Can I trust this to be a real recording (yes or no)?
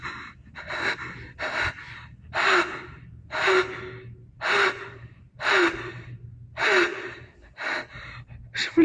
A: yes